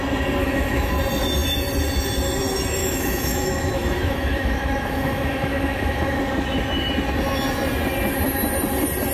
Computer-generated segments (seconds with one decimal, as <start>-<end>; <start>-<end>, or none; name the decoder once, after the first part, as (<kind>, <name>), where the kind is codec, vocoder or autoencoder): 0.4-0.9 (autoencoder, DAC-VAE); 2.8-6.2